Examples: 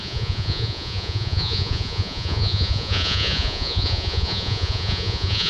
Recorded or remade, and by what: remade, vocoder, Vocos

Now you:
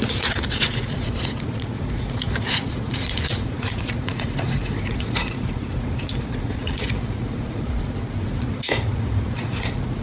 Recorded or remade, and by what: remade, vocoder, Vocos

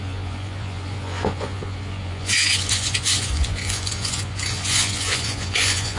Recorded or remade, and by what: remade, vocoder, Vocos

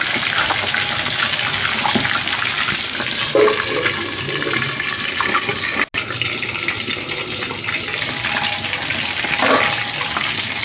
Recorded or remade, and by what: recorded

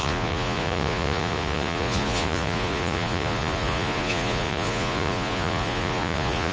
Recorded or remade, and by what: remade, vocoder, Vocos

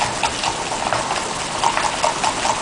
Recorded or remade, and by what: recorded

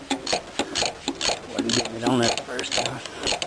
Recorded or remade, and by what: recorded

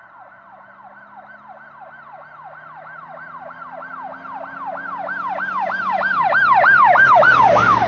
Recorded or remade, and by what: recorded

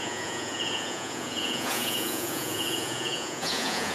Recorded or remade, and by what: remade, vocoder, Vocos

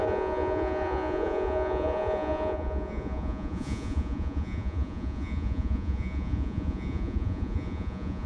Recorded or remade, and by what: remade, vocoder, Vocos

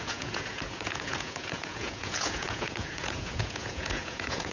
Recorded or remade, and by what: remade, vocoder, Vocos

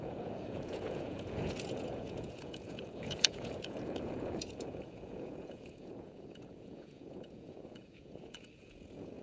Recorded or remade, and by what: remade, vocoder, Vocos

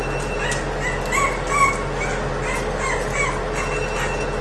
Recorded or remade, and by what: recorded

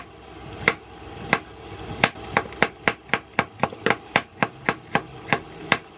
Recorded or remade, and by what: recorded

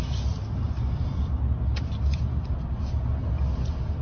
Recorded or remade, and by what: recorded